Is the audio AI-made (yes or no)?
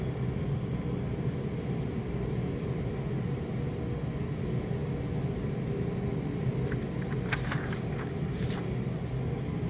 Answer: no